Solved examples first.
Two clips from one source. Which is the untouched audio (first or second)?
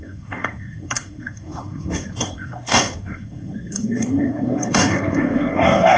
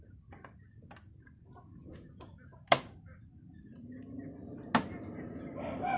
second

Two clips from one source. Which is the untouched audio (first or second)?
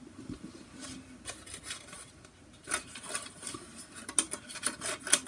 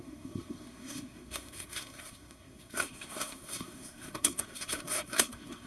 first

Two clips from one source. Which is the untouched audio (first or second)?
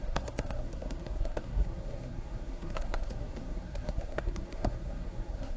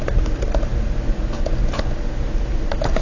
second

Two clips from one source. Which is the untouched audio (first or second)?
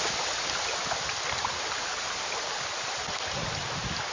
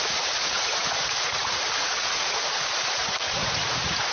first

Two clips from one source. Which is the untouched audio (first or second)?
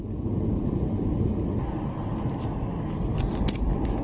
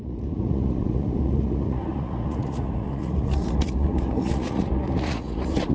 first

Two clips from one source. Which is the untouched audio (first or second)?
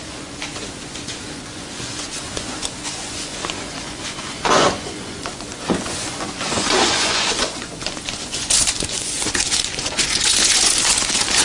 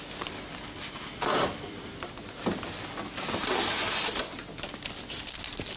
second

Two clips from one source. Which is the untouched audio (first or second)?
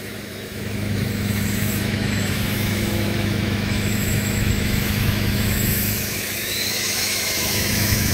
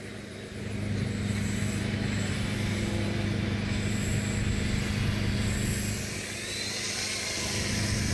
second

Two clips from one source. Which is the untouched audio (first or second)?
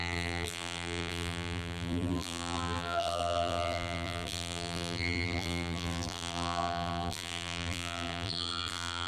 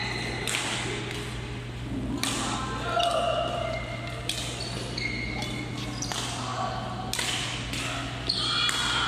second